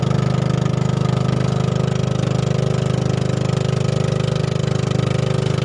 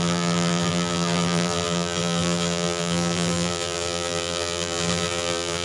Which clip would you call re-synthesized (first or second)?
second